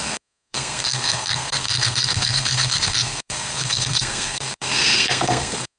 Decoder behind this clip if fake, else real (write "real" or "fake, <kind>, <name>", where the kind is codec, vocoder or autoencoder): fake, codec, SNAC